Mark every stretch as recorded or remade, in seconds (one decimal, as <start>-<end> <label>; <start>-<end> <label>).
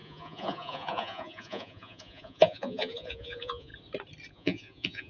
0.0-3.7 remade; 3.7-4.3 recorded; 4.3-5.1 remade